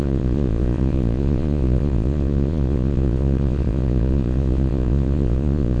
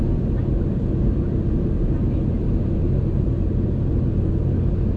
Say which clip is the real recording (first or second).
second